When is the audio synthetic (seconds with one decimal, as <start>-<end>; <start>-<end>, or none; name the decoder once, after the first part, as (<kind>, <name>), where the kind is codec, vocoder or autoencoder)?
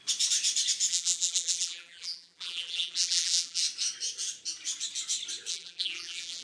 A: 0.9-3.6 (vocoder, BigVGAN v2); 5.5-6.4